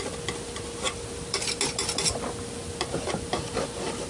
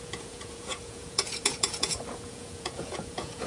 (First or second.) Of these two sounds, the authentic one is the first